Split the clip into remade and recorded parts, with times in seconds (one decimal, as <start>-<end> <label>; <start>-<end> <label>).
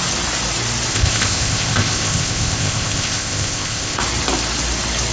0.0-0.9 recorded; 0.9-4.0 remade; 4.0-5.1 recorded